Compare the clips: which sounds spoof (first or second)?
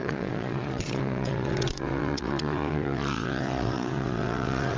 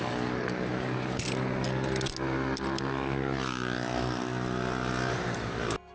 first